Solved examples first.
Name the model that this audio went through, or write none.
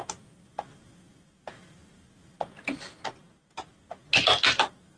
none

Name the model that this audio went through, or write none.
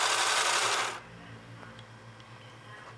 none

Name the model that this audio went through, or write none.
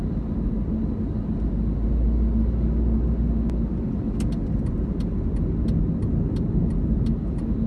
none